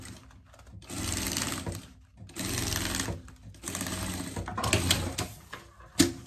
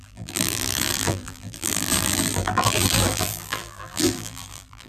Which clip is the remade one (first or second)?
second